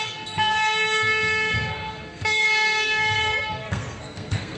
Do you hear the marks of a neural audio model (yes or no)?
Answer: yes